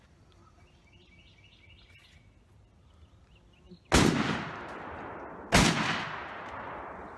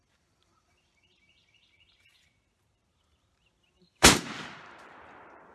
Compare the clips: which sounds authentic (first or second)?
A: first